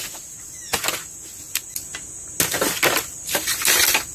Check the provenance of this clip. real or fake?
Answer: real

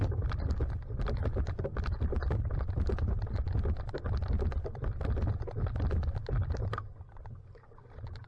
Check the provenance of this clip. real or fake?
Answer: real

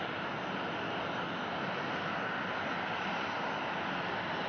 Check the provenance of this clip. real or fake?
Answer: real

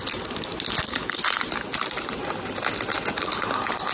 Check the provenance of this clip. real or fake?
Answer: real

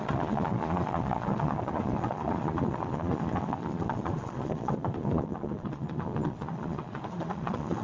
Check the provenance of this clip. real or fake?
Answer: fake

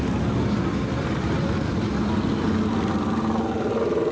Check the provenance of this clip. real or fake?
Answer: real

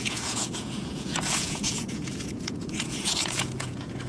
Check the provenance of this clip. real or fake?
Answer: fake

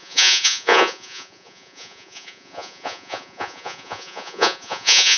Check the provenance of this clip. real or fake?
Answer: fake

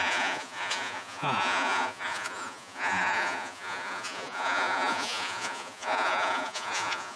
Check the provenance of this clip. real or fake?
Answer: fake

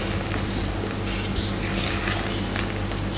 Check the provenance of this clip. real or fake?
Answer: real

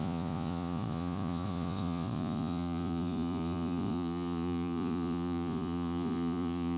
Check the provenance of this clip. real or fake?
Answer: fake